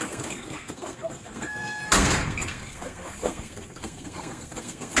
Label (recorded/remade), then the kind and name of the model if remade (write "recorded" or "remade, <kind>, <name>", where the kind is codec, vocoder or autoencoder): remade, codec, SNAC